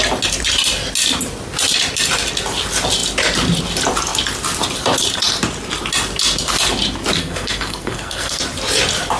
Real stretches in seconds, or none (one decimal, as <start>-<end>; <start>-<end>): 0.0-7.2; 8.4-9.2